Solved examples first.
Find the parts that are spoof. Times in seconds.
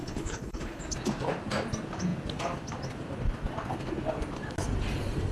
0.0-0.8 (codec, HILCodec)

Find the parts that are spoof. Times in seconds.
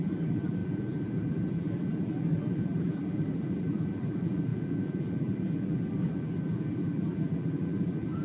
0.0-8.2 (vocoder, BigVGAN v2)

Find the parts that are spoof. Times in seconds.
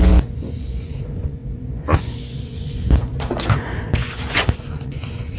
0.0-5.4 (vocoder, Vocos)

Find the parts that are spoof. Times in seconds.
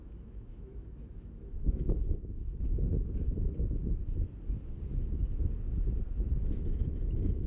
0.0-1.9 (autoencoder, DAC-VAE)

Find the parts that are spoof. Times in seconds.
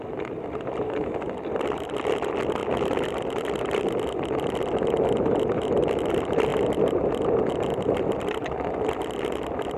none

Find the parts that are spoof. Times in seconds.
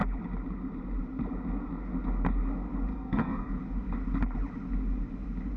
2.9-3.5 (codec, SNAC)